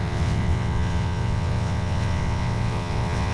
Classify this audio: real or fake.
fake